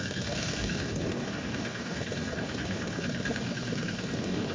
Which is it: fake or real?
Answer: fake